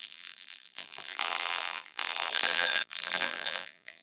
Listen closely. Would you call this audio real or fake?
fake